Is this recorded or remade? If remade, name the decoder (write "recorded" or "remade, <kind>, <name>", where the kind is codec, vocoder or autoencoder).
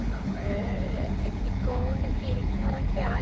remade, codec, HILCodec